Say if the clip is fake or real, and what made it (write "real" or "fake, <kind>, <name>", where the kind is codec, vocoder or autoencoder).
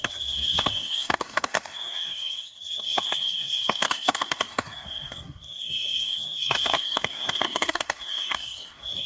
fake, codec, SNAC